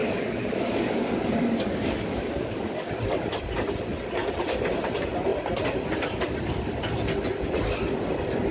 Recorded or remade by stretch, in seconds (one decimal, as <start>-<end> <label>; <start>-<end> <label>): 0.0-2.9 remade; 2.9-8.5 recorded